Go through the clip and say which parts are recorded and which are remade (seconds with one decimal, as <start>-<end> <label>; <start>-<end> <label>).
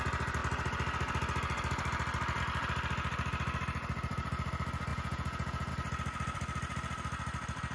0.0-4.9 recorded; 4.9-5.7 remade; 5.7-7.7 recorded